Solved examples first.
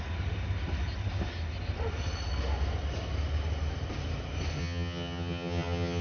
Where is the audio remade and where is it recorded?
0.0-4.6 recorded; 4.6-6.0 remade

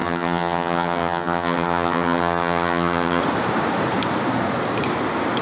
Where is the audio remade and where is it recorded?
0.0-3.2 remade; 3.2-5.4 recorded

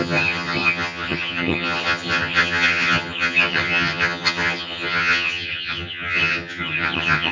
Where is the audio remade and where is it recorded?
0.0-7.3 remade

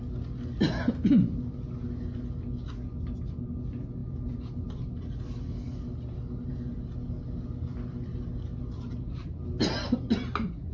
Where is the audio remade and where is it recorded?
0.0-10.7 recorded

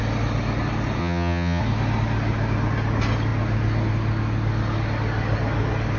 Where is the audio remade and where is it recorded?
0.0-1.0 recorded; 1.0-1.6 remade; 1.6-6.0 recorded

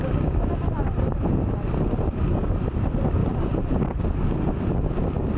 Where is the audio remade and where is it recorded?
0.0-5.4 recorded

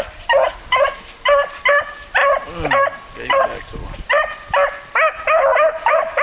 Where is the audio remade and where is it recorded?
0.0-6.2 recorded